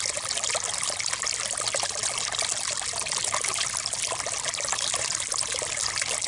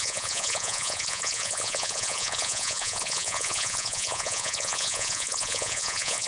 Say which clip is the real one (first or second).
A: first